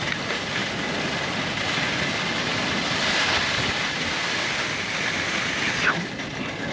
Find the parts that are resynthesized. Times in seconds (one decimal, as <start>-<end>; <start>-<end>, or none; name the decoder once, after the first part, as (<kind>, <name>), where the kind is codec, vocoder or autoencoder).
0.6-1.6 (vocoder, BigVGAN v2); 2.5-4.1